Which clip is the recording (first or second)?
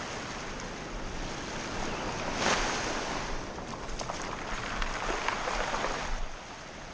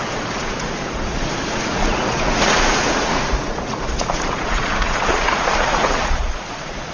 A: first